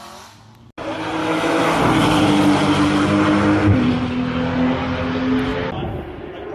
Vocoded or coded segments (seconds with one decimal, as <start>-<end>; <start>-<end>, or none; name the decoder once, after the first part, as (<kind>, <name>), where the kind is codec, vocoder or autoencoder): 1.2-1.8 (autoencoder, DAC-VAE)